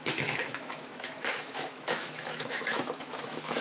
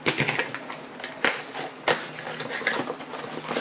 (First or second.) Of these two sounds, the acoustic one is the second